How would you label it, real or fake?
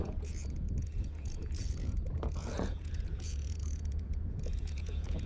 fake